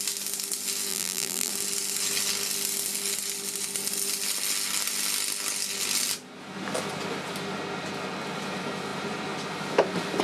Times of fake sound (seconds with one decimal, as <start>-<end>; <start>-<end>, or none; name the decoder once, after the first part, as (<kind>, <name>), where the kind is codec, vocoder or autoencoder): 0.9-1.5 (vocoder, BigVGAN v2)